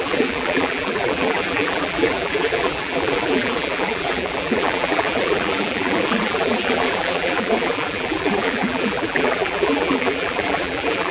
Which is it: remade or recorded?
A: remade